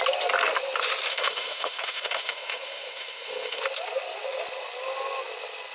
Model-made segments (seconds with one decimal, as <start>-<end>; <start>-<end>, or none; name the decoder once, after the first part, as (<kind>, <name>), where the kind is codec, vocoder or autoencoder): 1.1-3.6 (autoencoder, DAC-VAE)